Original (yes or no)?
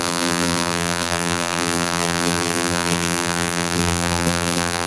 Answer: no